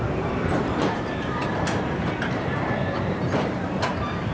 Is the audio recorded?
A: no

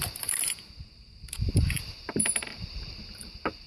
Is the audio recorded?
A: no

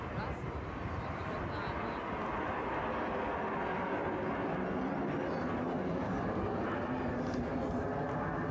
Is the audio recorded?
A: yes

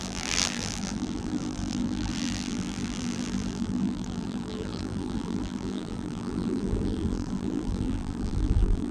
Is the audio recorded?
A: no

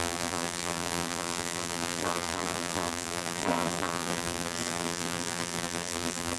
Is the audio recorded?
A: no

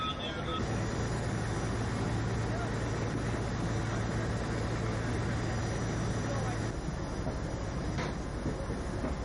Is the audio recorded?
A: yes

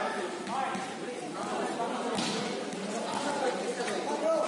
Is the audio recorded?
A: yes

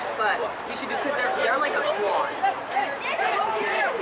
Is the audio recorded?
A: no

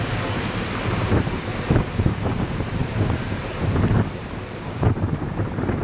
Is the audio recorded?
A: no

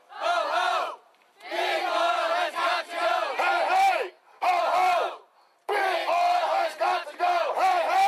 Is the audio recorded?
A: yes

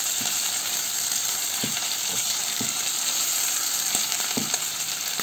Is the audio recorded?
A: no